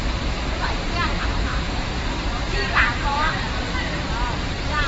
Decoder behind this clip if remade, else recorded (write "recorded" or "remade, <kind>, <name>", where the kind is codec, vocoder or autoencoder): remade, vocoder, BigVGAN v2